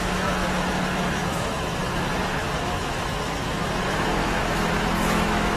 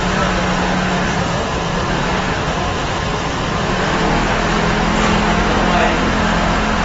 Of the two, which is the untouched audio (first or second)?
second